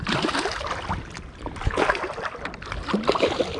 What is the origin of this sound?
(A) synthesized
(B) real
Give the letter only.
B